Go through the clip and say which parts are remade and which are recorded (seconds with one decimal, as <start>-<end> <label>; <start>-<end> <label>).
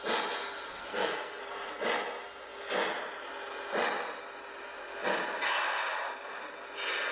0.0-0.7 recorded; 0.7-1.4 remade; 1.4-7.1 recorded